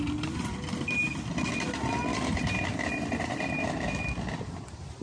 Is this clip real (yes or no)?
yes